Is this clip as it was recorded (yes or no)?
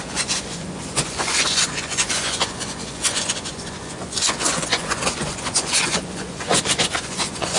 no